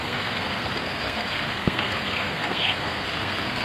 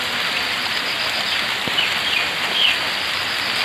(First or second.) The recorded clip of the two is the second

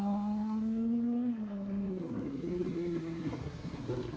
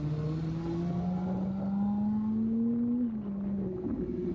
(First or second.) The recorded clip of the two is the second